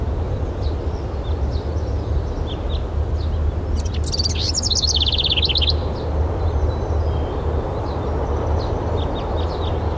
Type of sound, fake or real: real